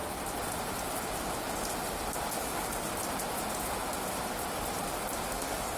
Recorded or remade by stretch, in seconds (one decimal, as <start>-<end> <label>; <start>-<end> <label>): 0.0-2.4 recorded; 2.4-2.9 remade; 2.9-5.3 recorded; 5.3-5.8 remade